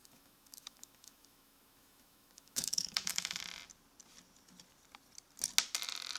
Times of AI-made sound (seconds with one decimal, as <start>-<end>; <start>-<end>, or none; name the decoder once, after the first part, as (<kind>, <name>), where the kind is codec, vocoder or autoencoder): 0.0-3.4 (autoencoder, DAC-VAE)